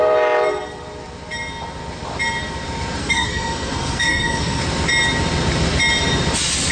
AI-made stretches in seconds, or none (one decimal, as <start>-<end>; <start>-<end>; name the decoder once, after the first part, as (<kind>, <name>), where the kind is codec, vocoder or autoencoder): 3.0-4.6 (codec, SNAC)